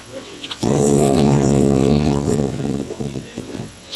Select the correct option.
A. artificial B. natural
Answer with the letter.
A